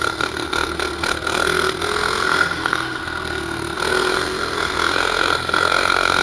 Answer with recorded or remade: remade